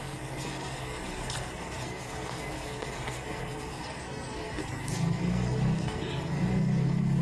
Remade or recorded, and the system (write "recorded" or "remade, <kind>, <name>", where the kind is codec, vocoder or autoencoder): remade, codec, SNAC